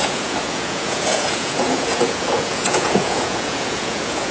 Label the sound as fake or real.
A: fake